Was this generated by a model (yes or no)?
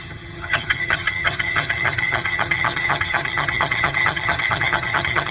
yes